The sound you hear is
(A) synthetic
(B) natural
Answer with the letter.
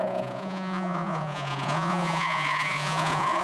A